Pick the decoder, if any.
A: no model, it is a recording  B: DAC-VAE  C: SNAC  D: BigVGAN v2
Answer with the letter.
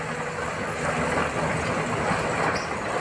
A